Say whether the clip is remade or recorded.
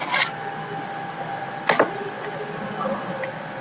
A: recorded